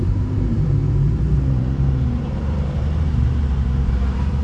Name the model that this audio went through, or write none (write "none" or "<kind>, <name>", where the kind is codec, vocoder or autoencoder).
vocoder, BigVGAN v2